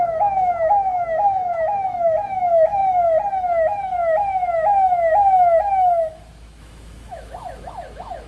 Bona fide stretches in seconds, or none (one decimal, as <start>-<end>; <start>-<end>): 2.8-5.6